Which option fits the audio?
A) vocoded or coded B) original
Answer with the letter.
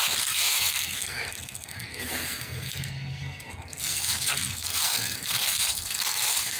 A